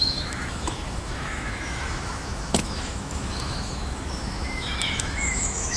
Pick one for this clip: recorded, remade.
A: remade